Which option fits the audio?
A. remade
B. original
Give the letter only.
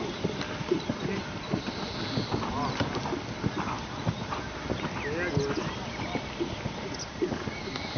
B